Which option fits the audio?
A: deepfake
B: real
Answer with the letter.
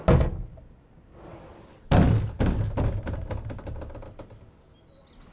B